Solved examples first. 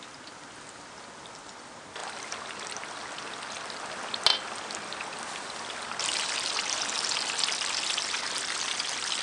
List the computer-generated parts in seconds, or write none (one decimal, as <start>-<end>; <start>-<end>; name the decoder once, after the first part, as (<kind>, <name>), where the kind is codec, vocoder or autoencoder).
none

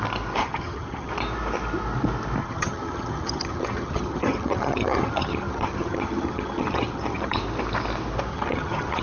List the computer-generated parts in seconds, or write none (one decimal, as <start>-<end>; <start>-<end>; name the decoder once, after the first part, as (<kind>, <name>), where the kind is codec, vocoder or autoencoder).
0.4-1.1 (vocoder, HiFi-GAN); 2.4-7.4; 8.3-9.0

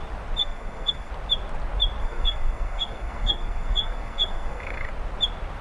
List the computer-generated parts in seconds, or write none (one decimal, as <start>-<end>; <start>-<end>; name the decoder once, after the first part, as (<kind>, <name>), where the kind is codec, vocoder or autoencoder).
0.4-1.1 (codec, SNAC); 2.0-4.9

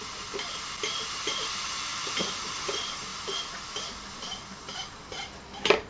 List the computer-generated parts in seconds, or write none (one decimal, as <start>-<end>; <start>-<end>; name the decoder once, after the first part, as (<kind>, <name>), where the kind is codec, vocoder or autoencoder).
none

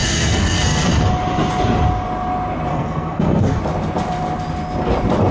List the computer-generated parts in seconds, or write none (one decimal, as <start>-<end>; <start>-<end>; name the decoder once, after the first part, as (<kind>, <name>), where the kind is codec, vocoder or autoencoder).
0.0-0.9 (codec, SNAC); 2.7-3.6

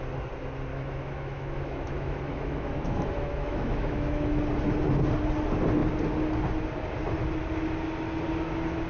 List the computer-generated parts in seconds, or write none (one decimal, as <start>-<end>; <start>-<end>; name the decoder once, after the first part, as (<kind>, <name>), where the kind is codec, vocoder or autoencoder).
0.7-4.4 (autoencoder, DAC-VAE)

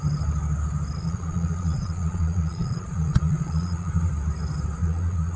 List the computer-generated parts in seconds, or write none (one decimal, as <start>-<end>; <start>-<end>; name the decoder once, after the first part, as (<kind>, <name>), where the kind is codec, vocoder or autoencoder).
1.0-4.1 (vocoder, Vocos); 4.8-5.4